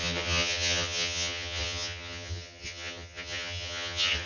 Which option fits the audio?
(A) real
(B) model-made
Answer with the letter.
B